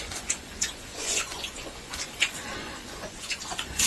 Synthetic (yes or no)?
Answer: yes